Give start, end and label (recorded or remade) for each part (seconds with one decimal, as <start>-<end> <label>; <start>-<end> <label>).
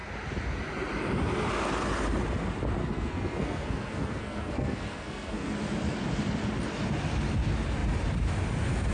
0.0-2.8 recorded; 2.8-5.5 remade; 5.5-8.9 recorded